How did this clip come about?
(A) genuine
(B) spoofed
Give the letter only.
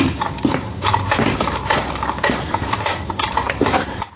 B